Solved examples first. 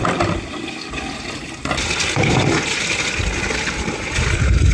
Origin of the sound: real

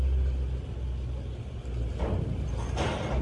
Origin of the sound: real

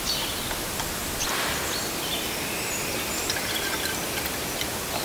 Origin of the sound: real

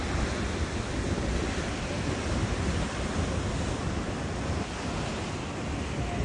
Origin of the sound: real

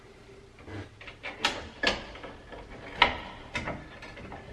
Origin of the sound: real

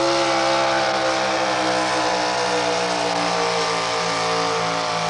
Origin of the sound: real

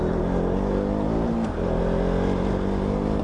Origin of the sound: real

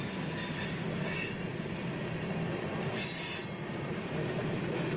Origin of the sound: real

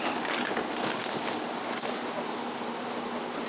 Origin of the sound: real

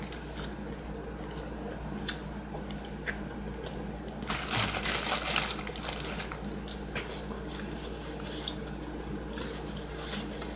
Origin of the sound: real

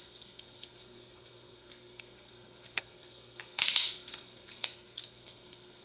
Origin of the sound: fake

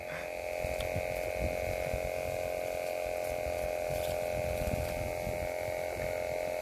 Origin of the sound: real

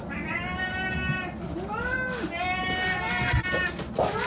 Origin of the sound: real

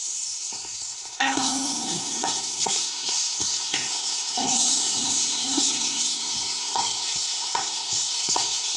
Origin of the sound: fake